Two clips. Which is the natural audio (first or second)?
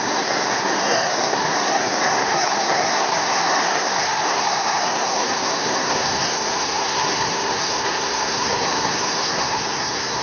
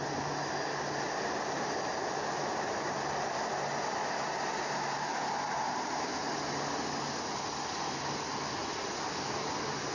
second